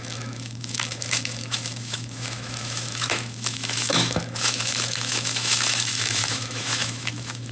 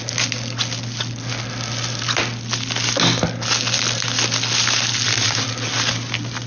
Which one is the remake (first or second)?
first